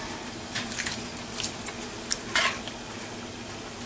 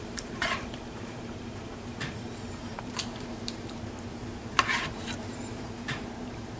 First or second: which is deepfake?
second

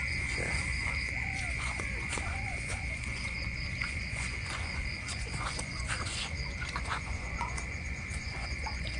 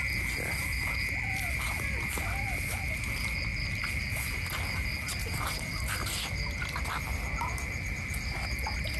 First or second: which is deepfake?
first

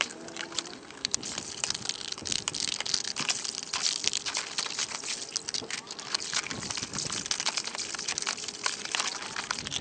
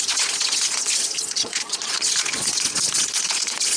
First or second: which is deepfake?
second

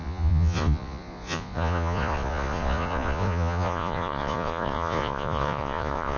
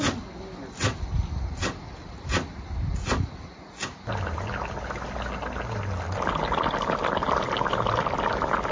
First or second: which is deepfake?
first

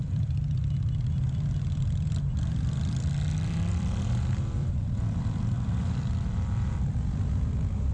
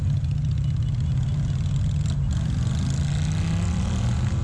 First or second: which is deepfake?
first